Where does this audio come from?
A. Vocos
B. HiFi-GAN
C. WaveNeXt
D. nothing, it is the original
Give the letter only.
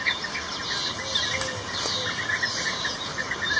D